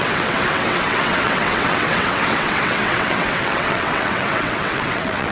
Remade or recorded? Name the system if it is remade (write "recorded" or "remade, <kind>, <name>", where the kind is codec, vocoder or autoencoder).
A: remade, vocoder, WaveNeXt